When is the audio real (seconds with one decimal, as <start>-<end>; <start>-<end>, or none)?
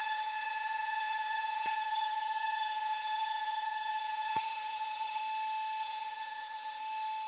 5.2-5.8; 6.8-7.3